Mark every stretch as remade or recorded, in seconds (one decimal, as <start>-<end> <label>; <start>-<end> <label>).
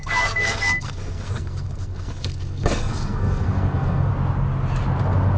0.0-4.1 remade; 4.1-5.4 recorded